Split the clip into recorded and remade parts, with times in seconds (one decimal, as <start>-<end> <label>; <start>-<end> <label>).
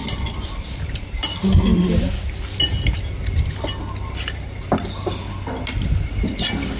0.0-6.8 recorded